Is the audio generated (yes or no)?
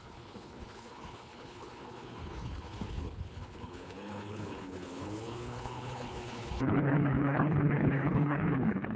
yes